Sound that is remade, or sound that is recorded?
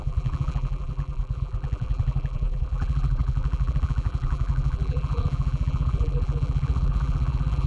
remade